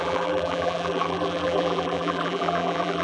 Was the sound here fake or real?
fake